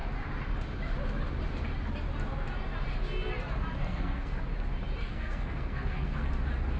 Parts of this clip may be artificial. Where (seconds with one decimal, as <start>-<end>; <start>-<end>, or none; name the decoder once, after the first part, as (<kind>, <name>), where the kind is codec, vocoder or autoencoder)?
3.8-4.4 (codec, SNAC); 5.0-6.3